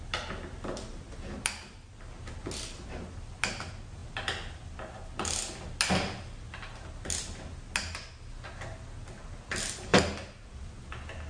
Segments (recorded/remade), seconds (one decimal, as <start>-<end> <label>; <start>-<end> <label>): 0.0-11.3 recorded